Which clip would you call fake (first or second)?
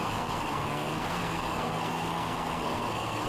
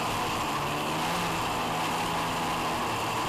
first